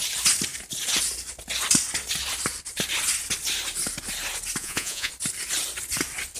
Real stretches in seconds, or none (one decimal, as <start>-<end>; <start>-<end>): 0.0-4.6; 5.1-6.4